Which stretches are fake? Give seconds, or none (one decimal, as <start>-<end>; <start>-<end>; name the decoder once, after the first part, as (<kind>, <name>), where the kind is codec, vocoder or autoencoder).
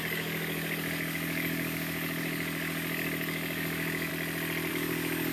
0.0-4.1 (codec, DAC); 4.7-5.3